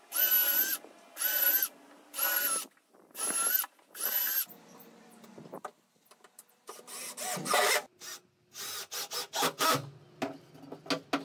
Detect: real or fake real